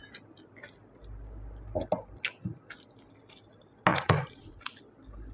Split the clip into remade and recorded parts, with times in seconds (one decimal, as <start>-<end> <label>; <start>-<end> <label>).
0.0-3.9 recorded; 3.9-4.8 remade; 4.8-5.3 recorded